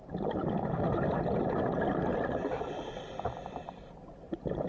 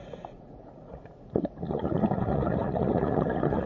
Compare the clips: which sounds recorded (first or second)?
first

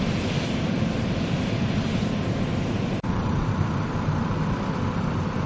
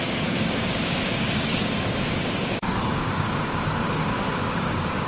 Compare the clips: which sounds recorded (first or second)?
first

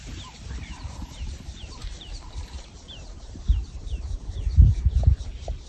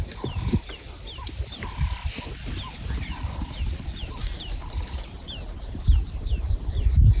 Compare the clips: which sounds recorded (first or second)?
second